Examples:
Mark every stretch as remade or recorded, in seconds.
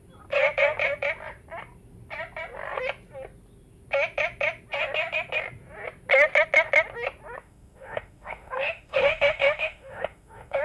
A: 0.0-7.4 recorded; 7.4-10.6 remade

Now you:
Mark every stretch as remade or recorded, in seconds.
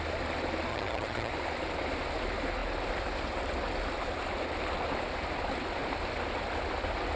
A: 0.0-0.7 recorded; 0.7-1.3 remade; 1.3-7.2 recorded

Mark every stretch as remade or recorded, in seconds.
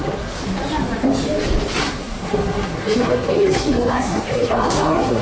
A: 0.0-0.4 remade; 0.4-1.8 recorded; 1.8-5.2 remade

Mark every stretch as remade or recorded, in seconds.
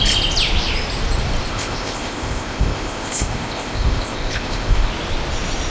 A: 0.0-1.5 recorded; 1.5-4.9 remade; 4.9-5.7 recorded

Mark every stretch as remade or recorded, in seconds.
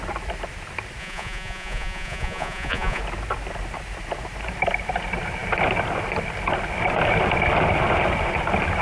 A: 0.0-1.0 recorded; 1.0-3.0 remade; 3.0-8.8 recorded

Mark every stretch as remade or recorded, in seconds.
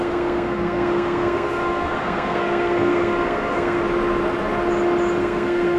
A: 0.0-3.8 remade; 3.8-5.2 recorded; 5.2-5.8 remade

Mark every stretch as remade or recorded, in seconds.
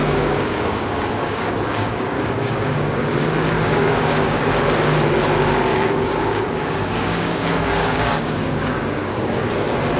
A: 0.0-4.5 remade; 4.5-5.7 recorded; 5.7-9.5 remade; 9.5-10.0 recorded